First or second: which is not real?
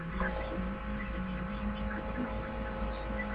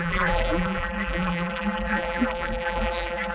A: second